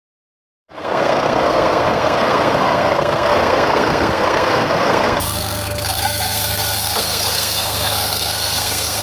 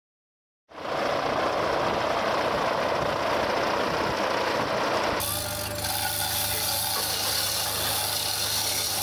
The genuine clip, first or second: second